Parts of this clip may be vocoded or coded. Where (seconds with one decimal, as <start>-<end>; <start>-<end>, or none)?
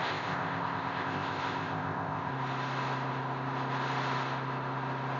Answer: 0.0-2.3